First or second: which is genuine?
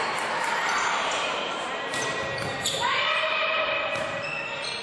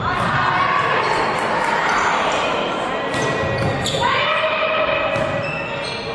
second